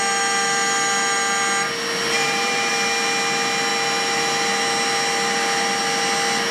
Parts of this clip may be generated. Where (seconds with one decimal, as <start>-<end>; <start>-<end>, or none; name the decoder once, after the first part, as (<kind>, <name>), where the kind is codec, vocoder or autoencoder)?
2.2-2.7 (vocoder, BigVGAN v2)